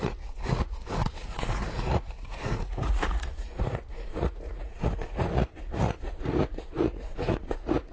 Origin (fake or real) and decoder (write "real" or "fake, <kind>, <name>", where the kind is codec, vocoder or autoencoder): fake, vocoder, Vocos